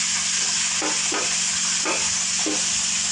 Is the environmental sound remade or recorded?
recorded